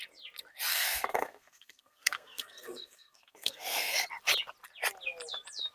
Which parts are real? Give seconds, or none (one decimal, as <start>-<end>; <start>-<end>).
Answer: 0.0-0.7; 4.1-5.7